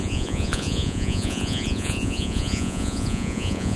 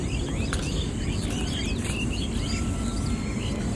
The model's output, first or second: first